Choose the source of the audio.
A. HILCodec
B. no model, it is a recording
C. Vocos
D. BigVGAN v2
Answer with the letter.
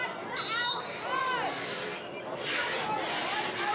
B